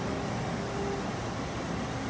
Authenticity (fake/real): real